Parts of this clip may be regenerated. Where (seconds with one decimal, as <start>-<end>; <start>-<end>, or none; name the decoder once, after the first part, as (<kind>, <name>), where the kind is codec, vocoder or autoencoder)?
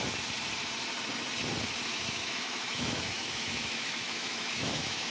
1.9-5.1 (autoencoder, DAC-VAE)